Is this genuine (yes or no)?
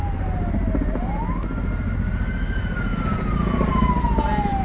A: yes